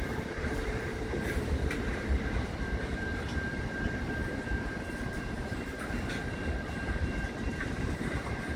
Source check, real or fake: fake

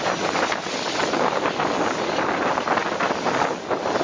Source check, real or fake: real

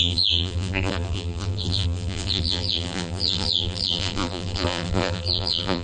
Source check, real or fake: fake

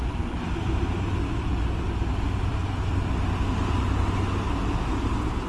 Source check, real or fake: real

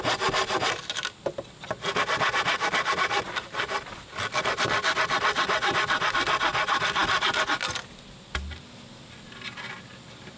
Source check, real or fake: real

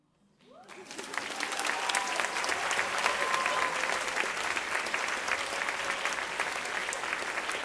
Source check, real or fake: real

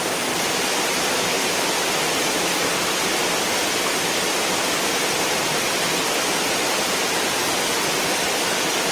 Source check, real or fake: real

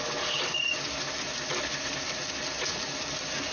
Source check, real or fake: real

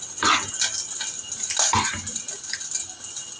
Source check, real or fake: real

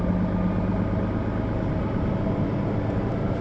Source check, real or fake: real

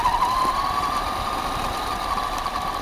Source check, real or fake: fake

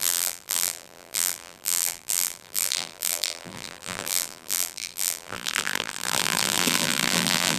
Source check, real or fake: fake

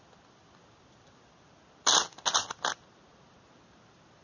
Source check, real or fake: real